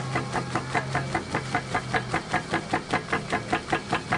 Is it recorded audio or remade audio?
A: recorded